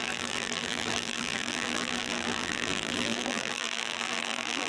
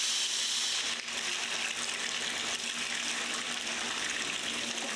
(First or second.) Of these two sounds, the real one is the second